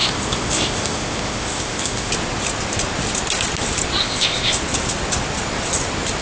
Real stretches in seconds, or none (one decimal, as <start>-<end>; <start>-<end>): 2.1-4.0; 4.6-6.2